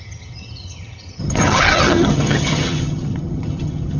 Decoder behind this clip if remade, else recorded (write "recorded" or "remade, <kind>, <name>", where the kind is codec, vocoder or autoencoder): remade, vocoder, HiFi-GAN